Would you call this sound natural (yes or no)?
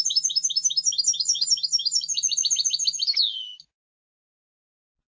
yes